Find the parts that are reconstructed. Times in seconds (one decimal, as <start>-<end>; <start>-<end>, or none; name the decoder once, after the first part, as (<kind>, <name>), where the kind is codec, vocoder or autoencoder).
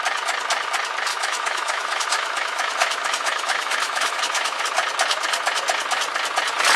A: 1.1-4.6 (autoencoder, DAC-VAE)